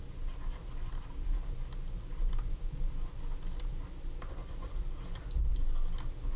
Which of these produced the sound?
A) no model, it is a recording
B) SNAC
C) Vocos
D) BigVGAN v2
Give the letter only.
A